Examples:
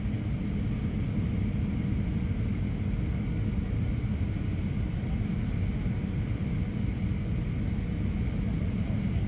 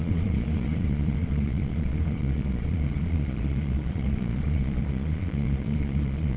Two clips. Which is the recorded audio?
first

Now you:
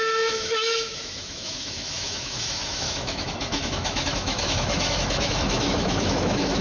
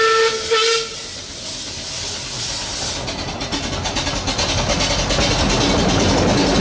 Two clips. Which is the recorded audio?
second